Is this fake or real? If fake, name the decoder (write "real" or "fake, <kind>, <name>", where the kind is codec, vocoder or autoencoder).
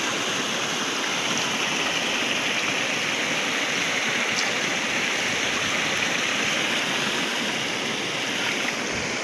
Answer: real